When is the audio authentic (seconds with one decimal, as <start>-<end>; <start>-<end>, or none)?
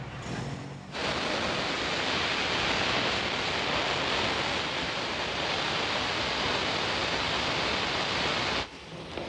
0.0-9.3